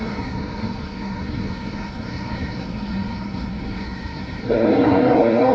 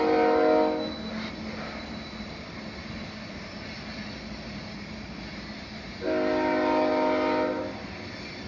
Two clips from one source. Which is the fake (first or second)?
first